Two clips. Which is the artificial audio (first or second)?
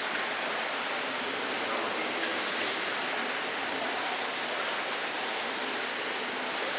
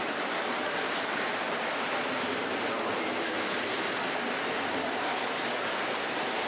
first